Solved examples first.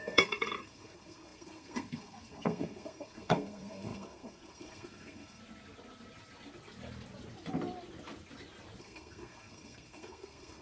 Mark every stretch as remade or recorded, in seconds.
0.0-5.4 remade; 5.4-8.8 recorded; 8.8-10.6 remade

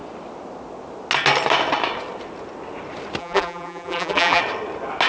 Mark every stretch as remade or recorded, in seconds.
0.0-3.2 recorded; 3.2-4.4 remade; 4.4-5.1 recorded

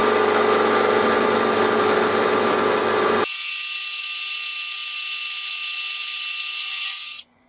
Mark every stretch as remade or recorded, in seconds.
0.0-6.6 recorded; 6.6-7.5 remade

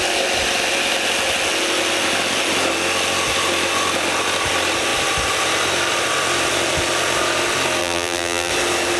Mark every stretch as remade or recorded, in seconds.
0.0-7.8 recorded; 7.8-8.5 remade; 8.5-9.0 recorded

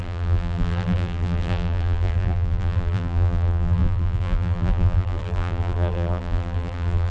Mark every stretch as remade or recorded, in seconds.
0.0-7.1 remade

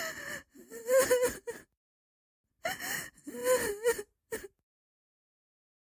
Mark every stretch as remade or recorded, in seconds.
0.0-5.8 recorded

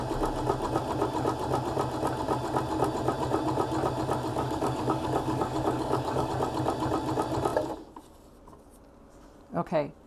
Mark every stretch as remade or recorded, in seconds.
0.0-4.3 recorded; 4.3-6.3 remade; 6.3-10.1 recorded